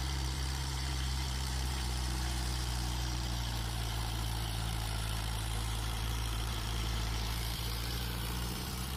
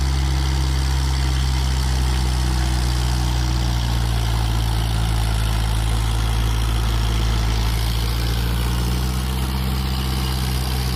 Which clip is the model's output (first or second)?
first